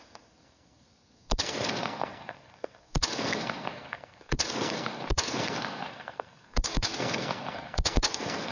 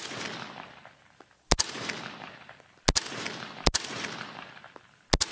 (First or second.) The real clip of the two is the second